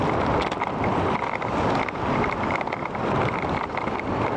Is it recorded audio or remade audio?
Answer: recorded